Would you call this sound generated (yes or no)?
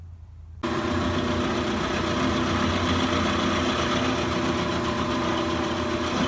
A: no